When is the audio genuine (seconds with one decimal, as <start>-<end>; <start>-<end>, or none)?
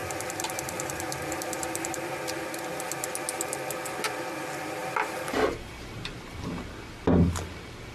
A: 2.2-4.8; 5.7-7.9